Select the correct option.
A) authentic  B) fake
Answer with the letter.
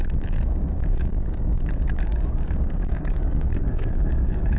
B